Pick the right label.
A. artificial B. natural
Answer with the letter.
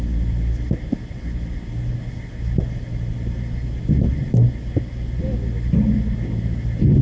B